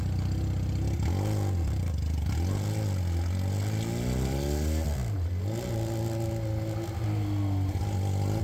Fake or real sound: real